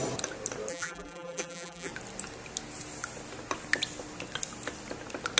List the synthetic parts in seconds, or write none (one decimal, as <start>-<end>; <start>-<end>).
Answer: 0.7-1.9